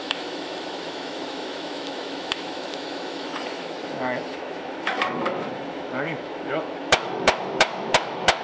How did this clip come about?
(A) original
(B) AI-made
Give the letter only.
B